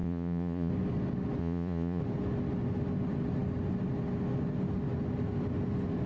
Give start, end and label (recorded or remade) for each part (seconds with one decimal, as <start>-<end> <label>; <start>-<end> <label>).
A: 0.0-0.7 remade; 0.7-1.4 recorded; 1.4-2.0 remade; 2.0-6.1 recorded